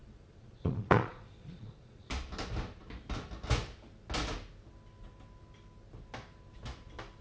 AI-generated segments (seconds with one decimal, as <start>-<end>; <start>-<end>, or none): 0.0-2.1